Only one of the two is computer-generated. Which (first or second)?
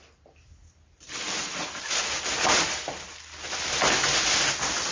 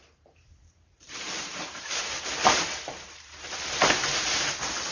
second